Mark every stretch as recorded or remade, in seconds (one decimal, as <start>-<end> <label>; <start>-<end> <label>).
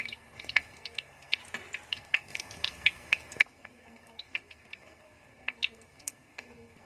0.0-1.4 remade; 1.4-1.9 recorded; 1.9-6.9 remade